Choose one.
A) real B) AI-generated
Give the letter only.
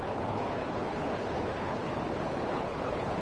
B